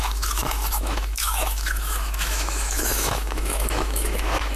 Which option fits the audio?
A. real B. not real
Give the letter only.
B